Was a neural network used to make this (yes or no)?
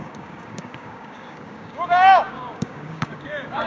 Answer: yes